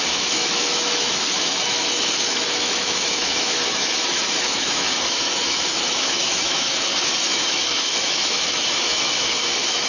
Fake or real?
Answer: fake